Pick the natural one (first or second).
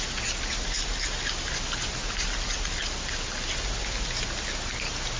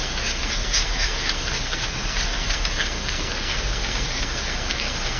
first